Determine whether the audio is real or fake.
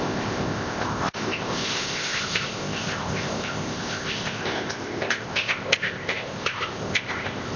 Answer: fake